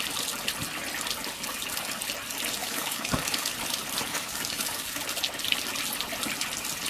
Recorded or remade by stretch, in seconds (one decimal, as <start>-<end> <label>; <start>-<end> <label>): 0.0-2.6 recorded; 2.6-3.5 remade; 3.5-4.1 recorded; 4.1-5.0 remade; 5.0-6.9 recorded